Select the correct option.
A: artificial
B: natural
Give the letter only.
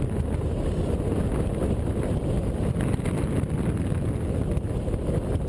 B